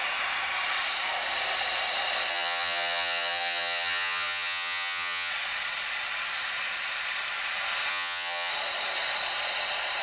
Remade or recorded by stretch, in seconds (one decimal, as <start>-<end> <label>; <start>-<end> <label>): 0.0-2.3 recorded; 2.3-5.3 remade; 5.3-7.9 recorded; 7.9-8.5 remade; 8.5-10.0 recorded